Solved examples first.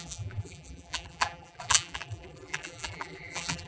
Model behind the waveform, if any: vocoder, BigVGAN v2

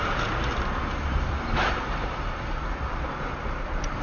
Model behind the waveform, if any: vocoder, BigVGAN v2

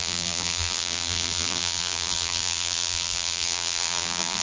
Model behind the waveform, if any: vocoder, BigVGAN v2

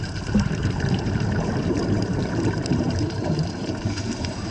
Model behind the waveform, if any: vocoder, BigVGAN v2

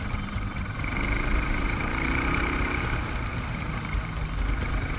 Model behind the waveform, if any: vocoder, BigVGAN v2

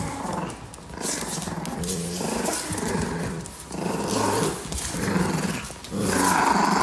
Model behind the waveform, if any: none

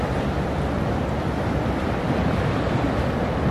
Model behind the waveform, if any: none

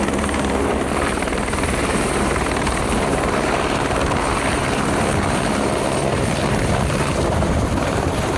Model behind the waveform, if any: vocoder, BigVGAN v2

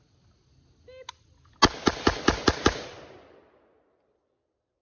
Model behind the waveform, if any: none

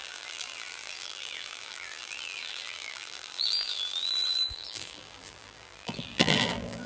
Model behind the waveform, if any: vocoder, BigVGAN v2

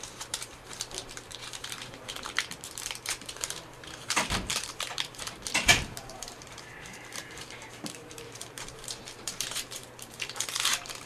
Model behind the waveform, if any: vocoder, BigVGAN v2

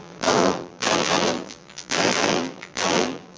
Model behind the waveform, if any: vocoder, BigVGAN v2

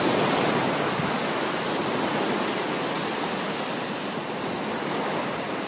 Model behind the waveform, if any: none